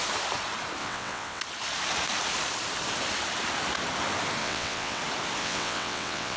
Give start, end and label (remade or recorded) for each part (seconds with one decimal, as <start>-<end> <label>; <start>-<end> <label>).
0.0-0.8 recorded; 0.8-1.4 remade; 1.4-4.4 recorded; 4.4-5.0 remade; 5.0-5.4 recorded; 5.4-6.4 remade